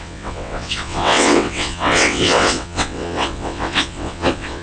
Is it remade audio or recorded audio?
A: remade